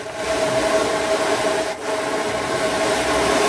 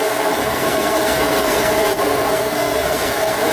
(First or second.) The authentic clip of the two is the first